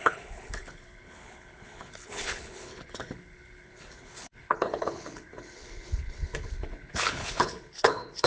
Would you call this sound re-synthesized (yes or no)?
yes